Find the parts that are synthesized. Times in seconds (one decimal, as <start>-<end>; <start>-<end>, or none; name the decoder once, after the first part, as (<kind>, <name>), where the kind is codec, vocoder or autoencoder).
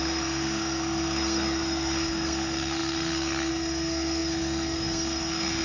0.0-5.6 (codec, SNAC)